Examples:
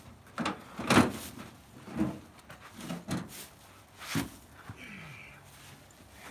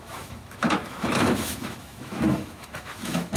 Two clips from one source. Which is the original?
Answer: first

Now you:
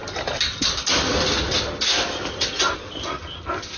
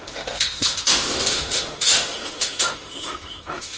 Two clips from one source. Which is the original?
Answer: first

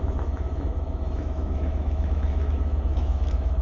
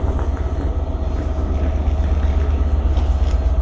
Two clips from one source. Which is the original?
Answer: second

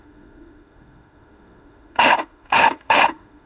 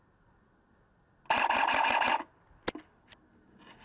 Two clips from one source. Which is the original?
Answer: second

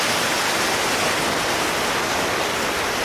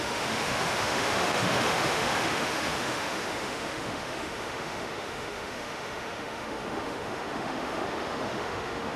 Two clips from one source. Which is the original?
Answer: first